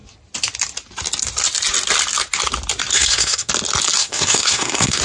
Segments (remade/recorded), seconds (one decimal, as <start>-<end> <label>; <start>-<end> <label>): 0.0-2.9 recorded; 2.9-3.5 remade; 3.5-4.0 recorded; 4.0-5.0 remade